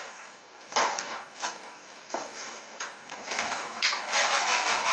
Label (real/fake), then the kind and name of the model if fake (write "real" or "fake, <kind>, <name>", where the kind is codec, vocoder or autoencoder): fake, codec, DAC